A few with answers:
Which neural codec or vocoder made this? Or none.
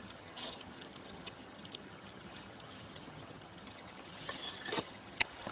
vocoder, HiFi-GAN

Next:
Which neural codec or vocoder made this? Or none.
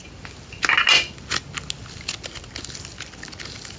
none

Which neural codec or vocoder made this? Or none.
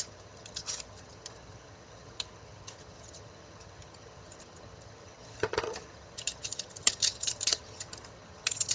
vocoder, HiFi-GAN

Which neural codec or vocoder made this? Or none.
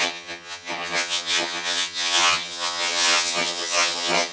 vocoder, HiFi-GAN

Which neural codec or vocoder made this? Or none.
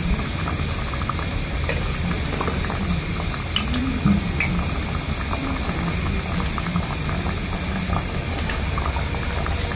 none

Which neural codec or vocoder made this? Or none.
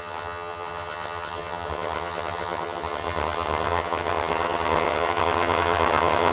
vocoder, HiFi-GAN